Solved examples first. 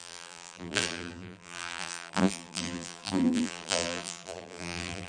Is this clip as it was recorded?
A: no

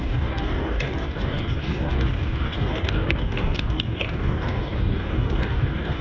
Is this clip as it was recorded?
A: no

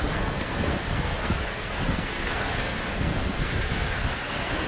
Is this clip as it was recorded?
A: no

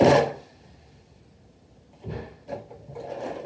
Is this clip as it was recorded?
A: yes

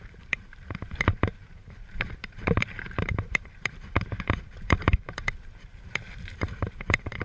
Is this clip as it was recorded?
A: no